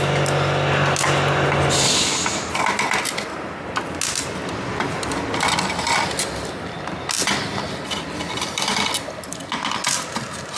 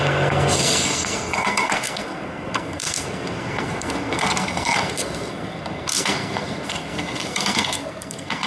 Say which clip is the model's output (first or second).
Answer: second